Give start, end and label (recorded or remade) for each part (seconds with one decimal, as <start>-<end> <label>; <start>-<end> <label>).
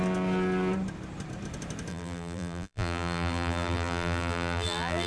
0.0-1.9 recorded; 1.9-5.1 remade